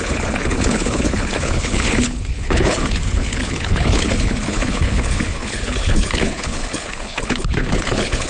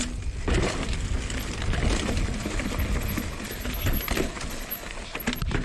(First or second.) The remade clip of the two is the first